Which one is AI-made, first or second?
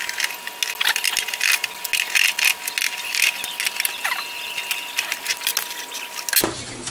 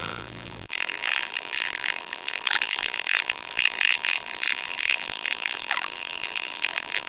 second